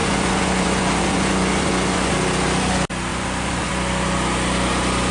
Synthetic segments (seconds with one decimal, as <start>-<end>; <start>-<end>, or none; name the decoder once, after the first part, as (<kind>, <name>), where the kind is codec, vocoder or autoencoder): 0.0-2.1 (vocoder, Vocos); 3.1-3.7